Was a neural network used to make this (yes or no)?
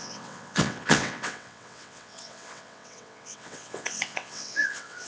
yes